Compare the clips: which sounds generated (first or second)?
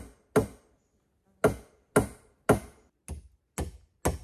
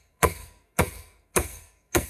second